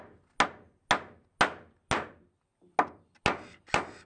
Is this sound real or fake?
real